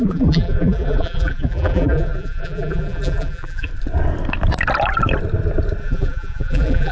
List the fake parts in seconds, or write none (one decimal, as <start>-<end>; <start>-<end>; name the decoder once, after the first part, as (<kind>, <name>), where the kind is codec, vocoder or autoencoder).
0.0-3.7 (vocoder, BigVGAN v2); 5.8-6.9